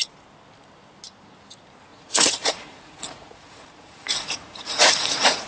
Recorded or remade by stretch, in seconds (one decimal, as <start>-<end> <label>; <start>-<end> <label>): 0.0-1.9 recorded; 1.9-5.5 remade